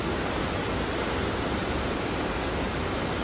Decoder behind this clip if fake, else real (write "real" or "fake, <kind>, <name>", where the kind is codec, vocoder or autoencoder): real